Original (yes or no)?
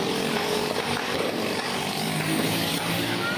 no